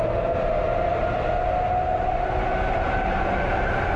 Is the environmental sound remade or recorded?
recorded